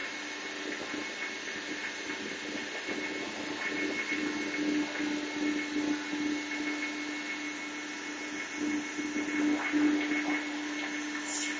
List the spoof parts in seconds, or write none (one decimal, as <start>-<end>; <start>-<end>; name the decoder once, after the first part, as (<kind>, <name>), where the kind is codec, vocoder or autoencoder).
none